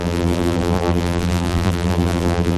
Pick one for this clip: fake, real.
fake